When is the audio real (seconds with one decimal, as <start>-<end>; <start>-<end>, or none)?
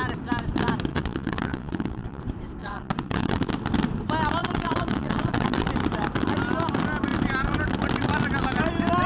0.0-0.9; 2.2-2.6; 3.5-4.4; 5.7-9.1